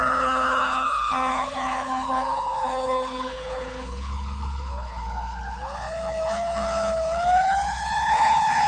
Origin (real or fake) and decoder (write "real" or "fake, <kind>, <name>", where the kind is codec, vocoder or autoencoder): fake, codec, HILCodec